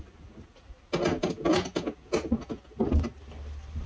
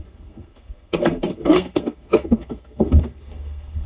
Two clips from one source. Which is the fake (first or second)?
second